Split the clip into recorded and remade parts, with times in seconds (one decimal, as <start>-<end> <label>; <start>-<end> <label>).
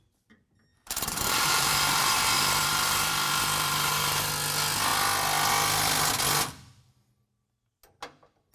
0.0-0.7 recorded; 0.7-4.3 remade; 4.3-8.5 recorded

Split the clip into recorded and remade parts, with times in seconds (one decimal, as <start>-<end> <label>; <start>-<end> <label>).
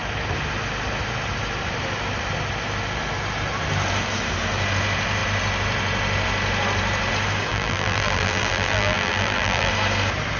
0.0-7.5 recorded; 7.5-9.7 remade; 9.7-10.4 recorded